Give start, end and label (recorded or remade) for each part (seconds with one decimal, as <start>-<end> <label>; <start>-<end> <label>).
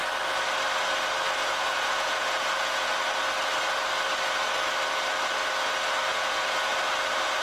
0.0-1.4 recorded; 1.4-2.9 remade; 2.9-6.1 recorded; 6.1-6.7 remade; 6.7-7.4 recorded